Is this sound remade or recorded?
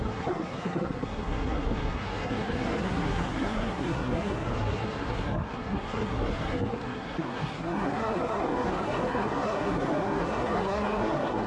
remade